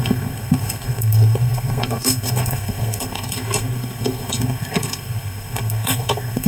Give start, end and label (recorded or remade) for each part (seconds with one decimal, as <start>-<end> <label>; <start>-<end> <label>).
0.0-6.5 remade